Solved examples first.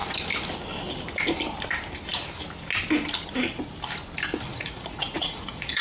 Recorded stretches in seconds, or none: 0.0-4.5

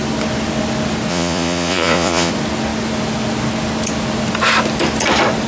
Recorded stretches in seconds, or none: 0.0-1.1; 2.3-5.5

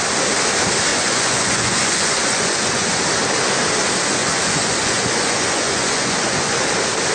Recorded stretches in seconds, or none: 0.0-0.9; 3.0-4.2; 6.6-7.1

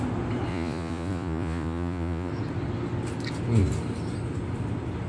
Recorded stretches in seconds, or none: 0.0-0.5; 2.3-5.1

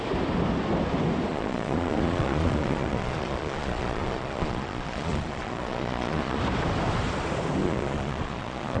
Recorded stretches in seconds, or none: 0.0-1.3; 6.4-7.6

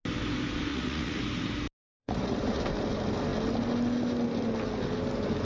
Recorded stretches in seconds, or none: 0.0-0.7; 1.2-2.0; 2.6-5.4

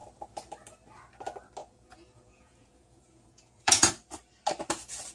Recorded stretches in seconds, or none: 0.0-1.6; 3.9-5.1

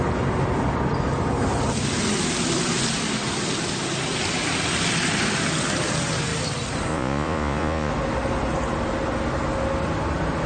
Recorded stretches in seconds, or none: 0.0-6.9; 7.9-10.5